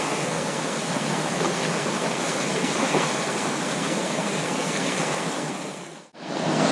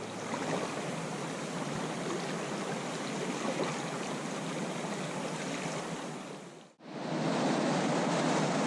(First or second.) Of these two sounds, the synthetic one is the first